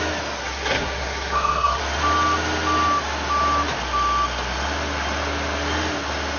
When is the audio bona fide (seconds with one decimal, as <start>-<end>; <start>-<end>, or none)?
0.0-0.4; 1.8-6.4